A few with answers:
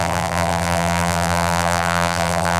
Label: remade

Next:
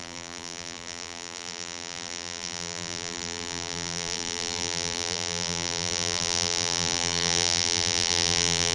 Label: remade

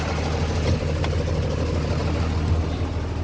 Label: recorded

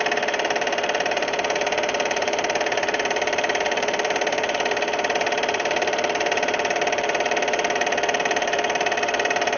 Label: remade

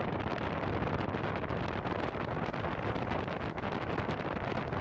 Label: remade